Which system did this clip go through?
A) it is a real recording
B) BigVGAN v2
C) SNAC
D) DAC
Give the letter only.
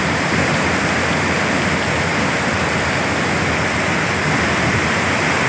A